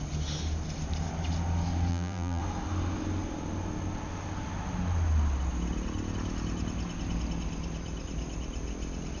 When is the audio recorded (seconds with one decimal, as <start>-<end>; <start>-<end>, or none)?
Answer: 0.0-1.9; 2.4-9.2